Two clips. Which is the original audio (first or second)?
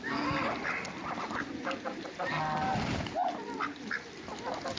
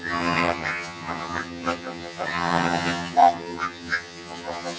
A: first